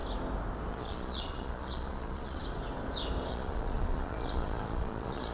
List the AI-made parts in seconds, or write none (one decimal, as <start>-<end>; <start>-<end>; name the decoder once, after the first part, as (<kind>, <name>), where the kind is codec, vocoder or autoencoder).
0.7-2.4 (vocoder, Vocos); 3.3-5.3